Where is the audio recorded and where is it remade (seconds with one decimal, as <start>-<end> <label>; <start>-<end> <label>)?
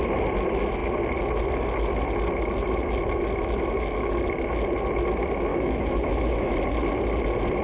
0.0-5.5 recorded; 5.5-6.5 remade; 6.5-7.6 recorded